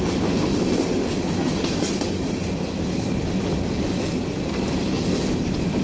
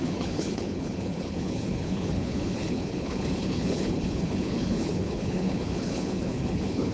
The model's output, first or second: second